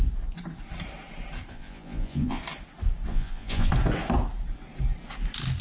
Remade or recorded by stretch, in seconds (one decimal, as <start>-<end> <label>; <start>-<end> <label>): 0.0-1.5 recorded; 1.5-2.4 remade; 2.4-3.1 recorded; 3.1-3.7 remade; 3.7-5.6 recorded